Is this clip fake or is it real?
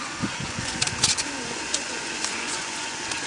fake